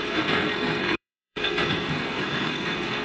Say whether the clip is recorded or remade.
remade